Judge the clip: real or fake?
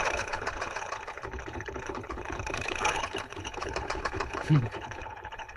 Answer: fake